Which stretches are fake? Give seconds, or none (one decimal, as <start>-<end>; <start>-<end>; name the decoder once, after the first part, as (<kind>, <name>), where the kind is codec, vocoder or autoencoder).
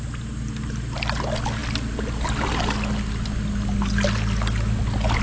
none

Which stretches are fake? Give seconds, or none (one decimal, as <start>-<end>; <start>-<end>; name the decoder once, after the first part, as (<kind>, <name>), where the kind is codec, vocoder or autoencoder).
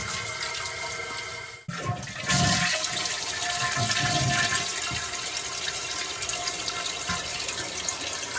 none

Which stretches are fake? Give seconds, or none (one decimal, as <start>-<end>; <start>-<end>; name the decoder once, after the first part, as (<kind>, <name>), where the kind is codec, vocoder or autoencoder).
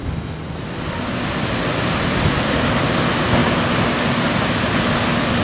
3.4-4.1 (vocoder, BigVGAN v2)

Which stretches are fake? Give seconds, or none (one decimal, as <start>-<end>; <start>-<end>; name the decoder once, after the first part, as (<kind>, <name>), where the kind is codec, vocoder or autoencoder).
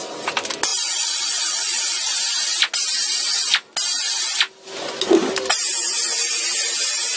0.7-1.8 (vocoder, Vocos)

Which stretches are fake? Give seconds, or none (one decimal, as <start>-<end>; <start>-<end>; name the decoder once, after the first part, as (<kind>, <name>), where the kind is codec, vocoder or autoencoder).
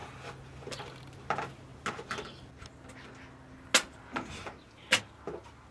none